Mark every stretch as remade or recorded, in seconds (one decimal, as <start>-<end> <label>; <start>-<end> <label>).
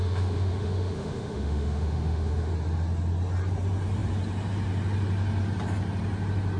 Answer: 0.0-2.5 remade; 2.5-6.6 recorded